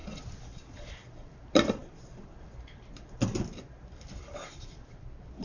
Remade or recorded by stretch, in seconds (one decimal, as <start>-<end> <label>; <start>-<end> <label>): 0.0-0.9 recorded; 0.9-5.4 remade